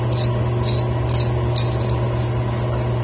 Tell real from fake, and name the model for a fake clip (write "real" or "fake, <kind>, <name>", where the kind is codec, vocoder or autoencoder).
real